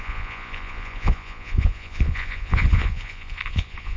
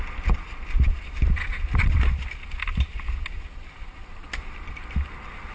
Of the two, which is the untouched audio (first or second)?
second